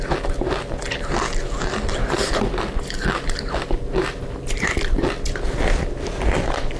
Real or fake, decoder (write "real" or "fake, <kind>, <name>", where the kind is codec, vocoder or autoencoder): real